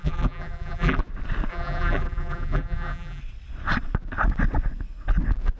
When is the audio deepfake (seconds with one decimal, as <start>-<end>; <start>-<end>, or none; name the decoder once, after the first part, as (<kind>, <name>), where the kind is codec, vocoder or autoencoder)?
0.0-1.0 (vocoder, BigVGAN v2); 1.5-3.2